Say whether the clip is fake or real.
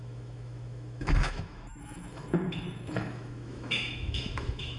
fake